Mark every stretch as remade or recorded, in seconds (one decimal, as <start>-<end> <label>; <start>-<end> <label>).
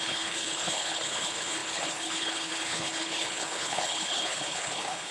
0.0-5.1 remade